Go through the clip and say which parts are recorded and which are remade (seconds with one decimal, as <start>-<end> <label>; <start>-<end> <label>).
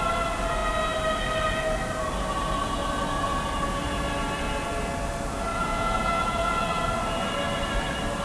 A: 0.0-5.5 recorded; 5.5-6.5 remade; 6.5-8.2 recorded